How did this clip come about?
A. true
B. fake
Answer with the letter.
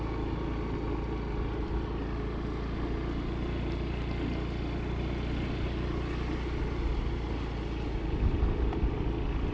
A